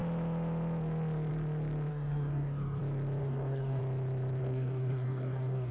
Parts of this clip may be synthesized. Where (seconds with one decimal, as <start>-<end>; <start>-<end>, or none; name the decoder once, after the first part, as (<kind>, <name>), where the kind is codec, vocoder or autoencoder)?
1.9-2.8 (codec, DAC); 3.2-3.8; 4.4-5.7